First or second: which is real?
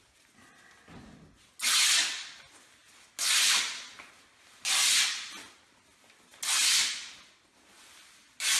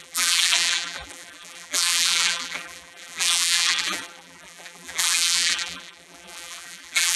first